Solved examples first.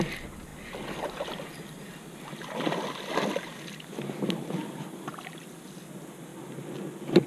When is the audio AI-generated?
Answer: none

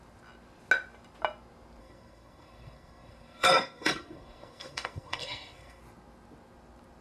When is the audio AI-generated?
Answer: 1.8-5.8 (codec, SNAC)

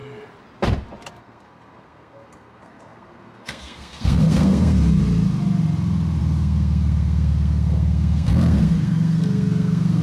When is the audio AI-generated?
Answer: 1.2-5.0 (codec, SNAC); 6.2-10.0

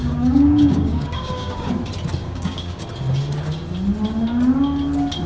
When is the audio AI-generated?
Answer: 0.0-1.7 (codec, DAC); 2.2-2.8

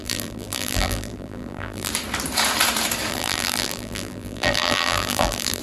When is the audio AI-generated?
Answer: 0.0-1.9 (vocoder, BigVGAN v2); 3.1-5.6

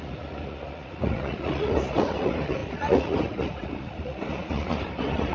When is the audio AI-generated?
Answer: 0.0-5.3 (vocoder, Vocos)

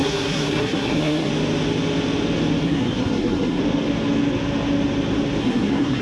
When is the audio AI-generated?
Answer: 0.0-1.3 (codec, SNAC); 2.6-3.6; 5.4-6.0

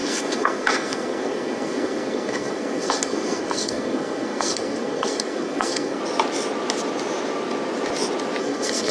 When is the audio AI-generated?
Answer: 0.0-6.0 (codec, SNAC); 8.4-8.9